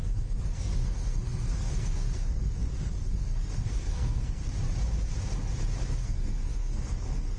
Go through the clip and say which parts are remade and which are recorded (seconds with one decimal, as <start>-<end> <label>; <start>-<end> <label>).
0.0-4.4 remade; 4.4-6.0 recorded; 6.0-7.4 remade